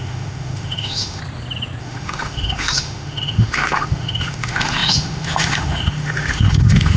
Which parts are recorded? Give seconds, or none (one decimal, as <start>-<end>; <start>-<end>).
1.2-1.8